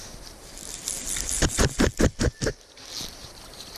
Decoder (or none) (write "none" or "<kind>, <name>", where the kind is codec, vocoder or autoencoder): vocoder, BigVGAN v2